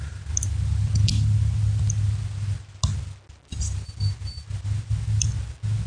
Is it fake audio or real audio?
real